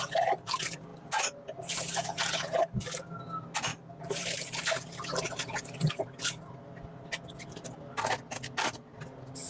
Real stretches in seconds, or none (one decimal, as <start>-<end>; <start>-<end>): 0.0-3.7; 4.6-9.5